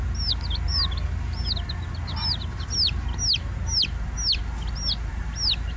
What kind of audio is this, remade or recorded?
recorded